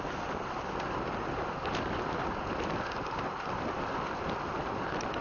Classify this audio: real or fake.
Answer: real